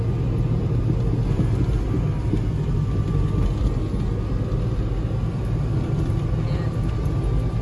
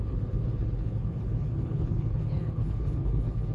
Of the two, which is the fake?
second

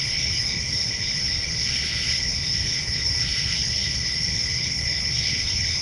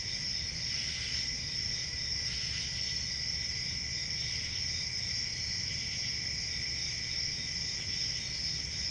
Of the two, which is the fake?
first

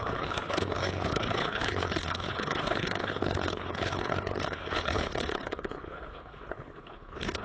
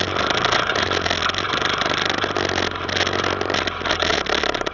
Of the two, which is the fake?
first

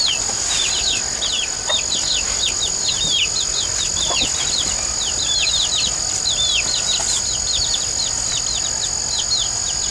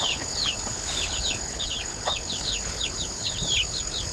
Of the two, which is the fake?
second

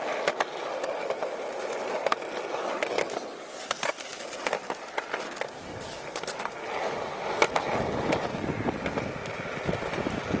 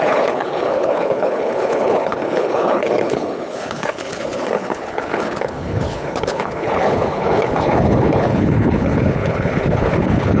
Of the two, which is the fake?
second